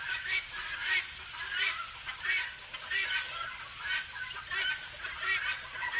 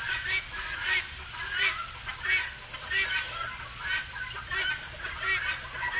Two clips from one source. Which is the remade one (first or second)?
first